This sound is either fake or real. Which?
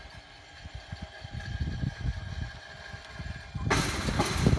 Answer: real